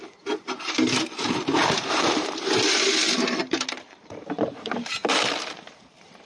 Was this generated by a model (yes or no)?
yes